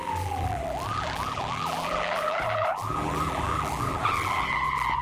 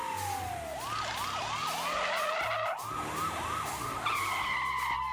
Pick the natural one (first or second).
second